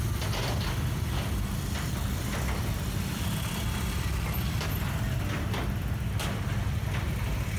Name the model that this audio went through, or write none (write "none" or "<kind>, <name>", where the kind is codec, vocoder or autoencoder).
none